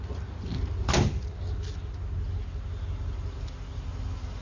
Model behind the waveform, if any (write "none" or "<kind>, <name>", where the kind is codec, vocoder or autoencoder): none